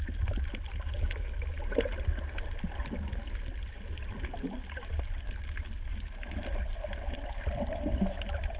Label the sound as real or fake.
real